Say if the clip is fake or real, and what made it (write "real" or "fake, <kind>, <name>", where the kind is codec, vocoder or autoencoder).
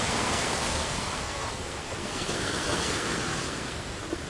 fake, codec, SNAC